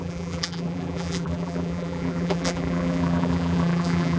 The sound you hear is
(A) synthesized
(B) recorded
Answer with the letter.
A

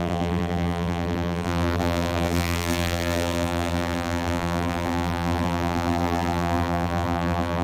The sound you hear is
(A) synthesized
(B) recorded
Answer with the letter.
A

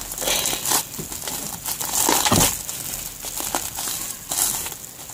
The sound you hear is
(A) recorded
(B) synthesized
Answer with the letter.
A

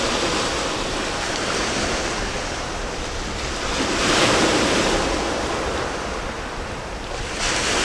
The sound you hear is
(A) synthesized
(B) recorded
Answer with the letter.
A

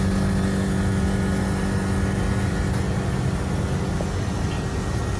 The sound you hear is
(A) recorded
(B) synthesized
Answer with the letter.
A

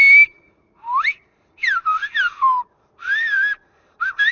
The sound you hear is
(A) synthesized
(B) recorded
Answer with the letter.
A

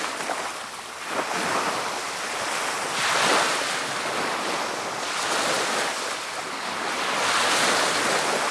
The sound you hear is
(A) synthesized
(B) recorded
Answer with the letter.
B